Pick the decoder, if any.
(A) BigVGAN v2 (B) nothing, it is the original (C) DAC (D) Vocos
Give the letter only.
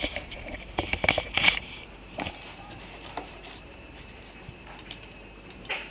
A